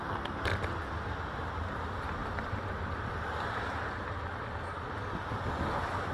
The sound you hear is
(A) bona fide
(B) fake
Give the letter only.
A